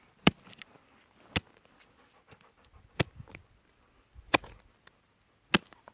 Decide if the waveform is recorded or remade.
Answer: recorded